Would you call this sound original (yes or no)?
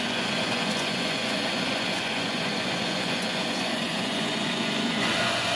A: no